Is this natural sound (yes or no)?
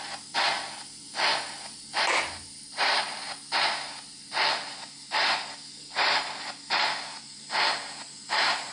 yes